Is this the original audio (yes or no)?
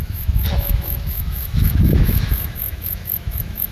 no